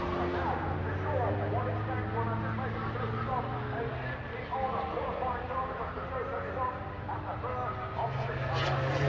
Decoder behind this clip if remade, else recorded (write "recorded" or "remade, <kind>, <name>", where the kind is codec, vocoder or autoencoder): recorded